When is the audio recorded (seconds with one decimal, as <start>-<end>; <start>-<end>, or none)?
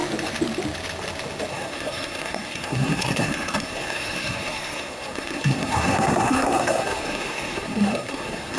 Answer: 0.0-1.5